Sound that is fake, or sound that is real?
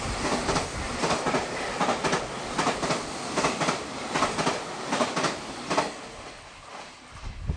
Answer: real